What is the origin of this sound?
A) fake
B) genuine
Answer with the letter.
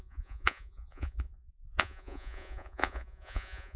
A